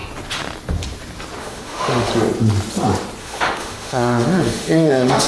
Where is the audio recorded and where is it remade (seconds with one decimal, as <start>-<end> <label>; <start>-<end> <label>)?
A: 0.0-1.4 recorded; 1.4-2.1 remade; 2.1-3.2 recorded; 3.2-5.3 remade

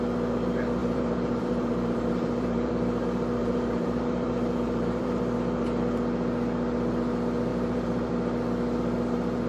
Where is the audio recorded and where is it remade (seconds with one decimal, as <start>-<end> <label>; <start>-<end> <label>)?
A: 0.0-0.8 recorded; 0.8-2.7 remade; 2.7-3.4 recorded; 3.4-5.2 remade; 5.2-7.5 recorded; 7.5-8.1 remade; 8.1-9.5 recorded

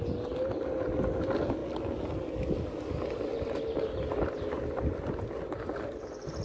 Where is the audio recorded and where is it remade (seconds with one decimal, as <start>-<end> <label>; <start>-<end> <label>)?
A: 0.0-6.4 recorded

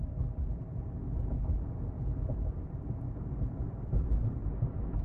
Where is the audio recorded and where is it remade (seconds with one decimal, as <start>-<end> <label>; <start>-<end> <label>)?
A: 0.0-0.5 recorded; 0.5-1.0 remade; 1.0-5.0 recorded

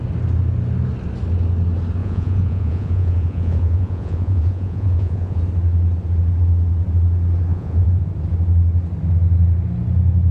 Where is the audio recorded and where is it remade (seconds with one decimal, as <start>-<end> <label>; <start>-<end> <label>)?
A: 0.0-2.0 recorded; 2.0-5.4 remade; 5.4-7.5 recorded; 7.5-8.1 remade; 8.1-10.3 recorded

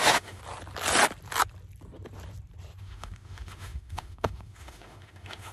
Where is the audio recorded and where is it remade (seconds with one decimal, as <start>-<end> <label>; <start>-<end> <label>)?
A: 0.0-0.4 remade; 0.4-2.8 recorded; 2.8-5.5 remade